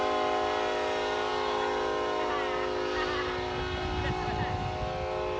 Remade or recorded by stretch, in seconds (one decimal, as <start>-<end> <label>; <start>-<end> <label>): 0.0-5.4 recorded